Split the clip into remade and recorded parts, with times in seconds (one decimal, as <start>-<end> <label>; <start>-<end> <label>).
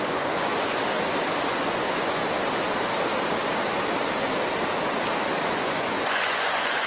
0.0-0.8 remade; 0.8-1.5 recorded; 1.5-2.2 remade; 2.2-5.5 recorded; 5.5-6.9 remade